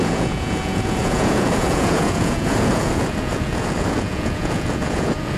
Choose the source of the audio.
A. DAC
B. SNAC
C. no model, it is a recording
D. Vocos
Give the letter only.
D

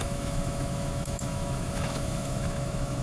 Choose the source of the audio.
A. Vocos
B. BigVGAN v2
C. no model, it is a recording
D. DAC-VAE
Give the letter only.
D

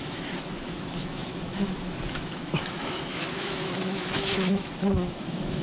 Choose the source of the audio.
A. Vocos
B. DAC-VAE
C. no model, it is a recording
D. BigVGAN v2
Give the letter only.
B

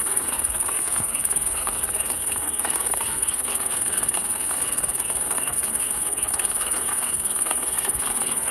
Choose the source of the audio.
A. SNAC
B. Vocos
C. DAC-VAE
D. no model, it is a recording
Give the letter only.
A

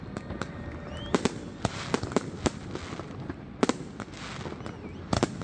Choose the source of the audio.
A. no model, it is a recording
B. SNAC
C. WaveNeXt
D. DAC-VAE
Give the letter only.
A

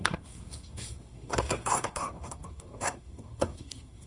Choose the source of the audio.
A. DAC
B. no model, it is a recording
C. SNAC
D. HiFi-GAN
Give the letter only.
C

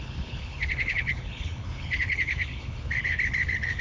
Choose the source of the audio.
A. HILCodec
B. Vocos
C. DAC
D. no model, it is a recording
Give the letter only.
A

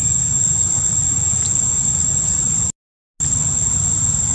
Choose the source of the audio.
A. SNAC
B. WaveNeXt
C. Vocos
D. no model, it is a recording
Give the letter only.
D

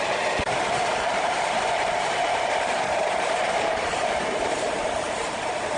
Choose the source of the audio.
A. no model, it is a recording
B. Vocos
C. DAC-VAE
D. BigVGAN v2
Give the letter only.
D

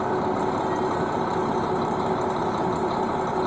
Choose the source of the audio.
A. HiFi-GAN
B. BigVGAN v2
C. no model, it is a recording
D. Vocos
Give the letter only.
C